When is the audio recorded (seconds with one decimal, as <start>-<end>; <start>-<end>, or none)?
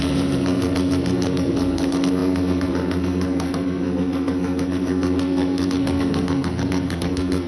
none